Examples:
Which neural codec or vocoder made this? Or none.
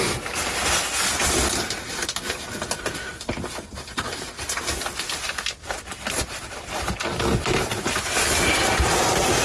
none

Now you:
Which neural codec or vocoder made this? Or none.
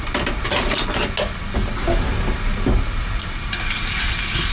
none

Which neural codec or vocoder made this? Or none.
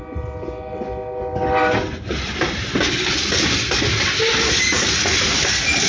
none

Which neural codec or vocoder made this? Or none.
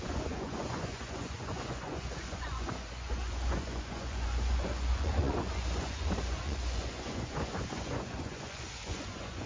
vocoder, Vocos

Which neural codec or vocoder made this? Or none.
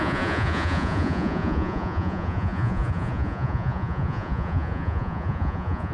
vocoder, Vocos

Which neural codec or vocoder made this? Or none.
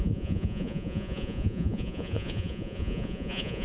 vocoder, Vocos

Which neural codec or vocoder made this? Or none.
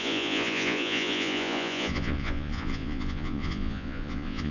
vocoder, Vocos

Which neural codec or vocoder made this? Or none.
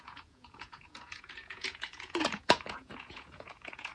vocoder, Vocos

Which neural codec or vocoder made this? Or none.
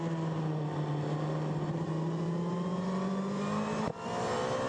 none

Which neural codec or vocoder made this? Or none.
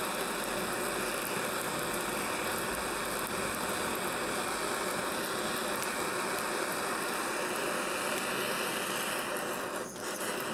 none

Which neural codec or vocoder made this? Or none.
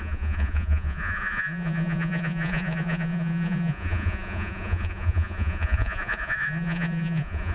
vocoder, Vocos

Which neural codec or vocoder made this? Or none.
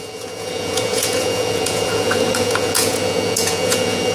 vocoder, Vocos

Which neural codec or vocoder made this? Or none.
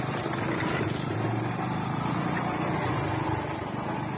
none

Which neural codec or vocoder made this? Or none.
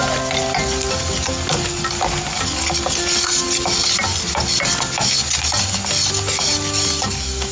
none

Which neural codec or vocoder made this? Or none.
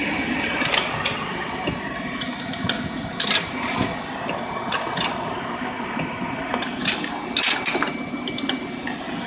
none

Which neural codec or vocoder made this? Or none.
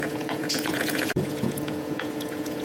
vocoder, Vocos